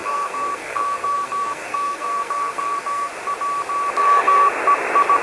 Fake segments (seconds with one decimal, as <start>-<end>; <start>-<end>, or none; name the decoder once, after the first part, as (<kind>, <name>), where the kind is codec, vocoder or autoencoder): 0.0-3.1 (codec, SNAC); 4.0-4.5